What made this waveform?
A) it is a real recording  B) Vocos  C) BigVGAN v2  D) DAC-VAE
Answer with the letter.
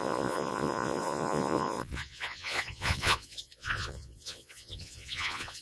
B